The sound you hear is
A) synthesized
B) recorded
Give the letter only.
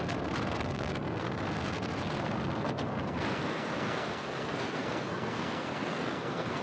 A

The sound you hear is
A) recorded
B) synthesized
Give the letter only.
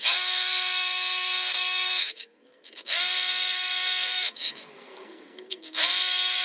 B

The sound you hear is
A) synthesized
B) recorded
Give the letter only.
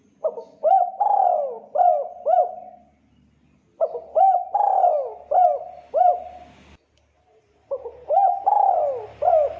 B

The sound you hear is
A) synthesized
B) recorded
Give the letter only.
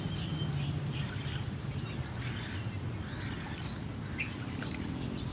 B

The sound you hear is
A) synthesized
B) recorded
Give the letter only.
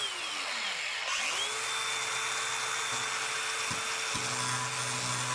B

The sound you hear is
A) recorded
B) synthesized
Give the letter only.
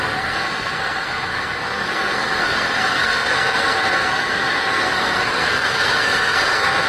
B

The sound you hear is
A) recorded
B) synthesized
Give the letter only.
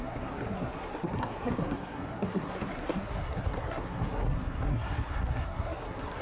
B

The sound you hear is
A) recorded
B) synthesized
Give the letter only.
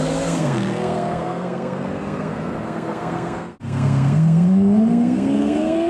B